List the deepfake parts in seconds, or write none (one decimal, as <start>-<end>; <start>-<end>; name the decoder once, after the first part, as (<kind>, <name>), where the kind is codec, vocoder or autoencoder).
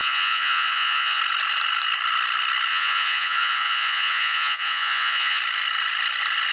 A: 0.0-1.2 (vocoder, Vocos); 2.7-5.4